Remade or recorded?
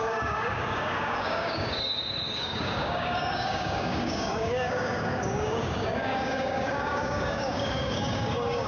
remade